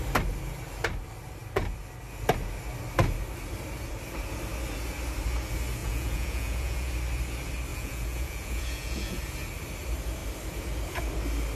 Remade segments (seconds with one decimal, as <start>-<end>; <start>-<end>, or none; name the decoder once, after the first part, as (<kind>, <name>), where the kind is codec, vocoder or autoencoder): 5.8-6.9 (vocoder, Vocos); 7.7-9.2